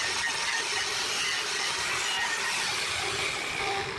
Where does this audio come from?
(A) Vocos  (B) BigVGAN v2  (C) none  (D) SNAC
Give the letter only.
C